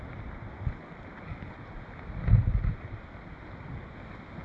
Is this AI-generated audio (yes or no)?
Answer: no